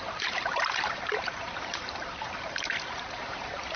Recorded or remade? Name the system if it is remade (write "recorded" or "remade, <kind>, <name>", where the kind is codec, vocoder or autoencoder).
remade, vocoder, BigVGAN v2